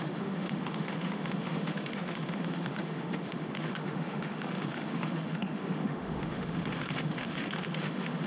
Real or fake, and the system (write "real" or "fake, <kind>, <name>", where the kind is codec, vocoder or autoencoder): fake, autoencoder, DAC-VAE